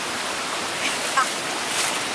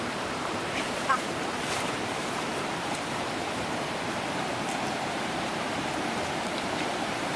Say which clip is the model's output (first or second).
second